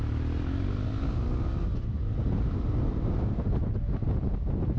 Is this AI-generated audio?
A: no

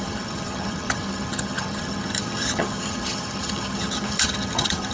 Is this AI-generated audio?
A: yes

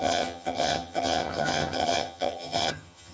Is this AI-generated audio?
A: yes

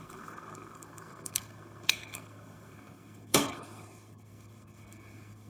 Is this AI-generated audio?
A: yes